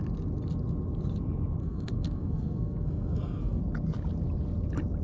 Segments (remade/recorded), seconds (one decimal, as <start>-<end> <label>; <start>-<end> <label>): 0.0-1.6 recorded; 1.6-3.6 remade; 3.6-5.0 recorded

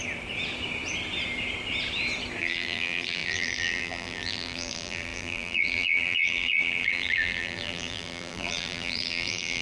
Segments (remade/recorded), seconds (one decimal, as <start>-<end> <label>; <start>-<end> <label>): 0.0-2.4 recorded; 2.4-9.6 remade

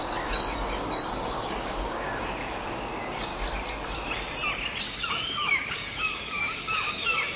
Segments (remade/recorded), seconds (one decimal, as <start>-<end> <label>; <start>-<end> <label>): 0.0-3.3 remade; 3.3-4.8 recorded; 4.8-7.4 remade

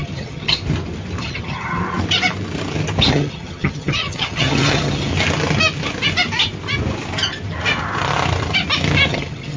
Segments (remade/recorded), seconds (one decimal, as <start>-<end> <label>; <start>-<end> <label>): 0.0-0.6 remade; 0.6-1.2 recorded; 1.2-1.8 remade; 1.8-3.1 recorded; 3.1-5.1 remade; 5.1-9.1 recorded; 9.1-9.6 remade

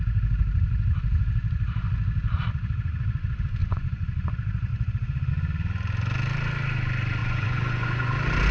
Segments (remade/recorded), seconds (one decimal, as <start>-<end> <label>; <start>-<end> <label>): 0.0-3.6 recorded; 3.6-4.3 remade; 4.3-4.7 recorded; 4.7-5.3 remade; 5.3-7.2 recorded; 7.2-8.1 remade; 8.1-8.5 recorded

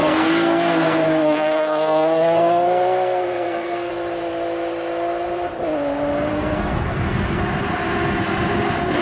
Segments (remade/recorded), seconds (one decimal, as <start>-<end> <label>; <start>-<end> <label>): 0.0-3.9 remade; 3.9-6.3 recorded; 6.3-7.4 remade; 7.4-9.0 recorded

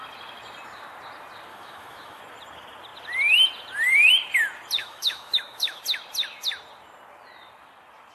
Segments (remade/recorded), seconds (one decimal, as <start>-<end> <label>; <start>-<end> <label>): 0.0-1.5 recorded; 1.5-2.2 remade; 2.2-4.8 recorded; 4.8-5.8 remade; 5.8-8.1 recorded

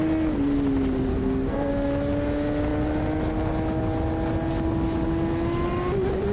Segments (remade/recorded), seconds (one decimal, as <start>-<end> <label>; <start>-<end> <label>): 0.0-1.1 recorded; 1.1-1.7 remade; 1.7-6.3 recorded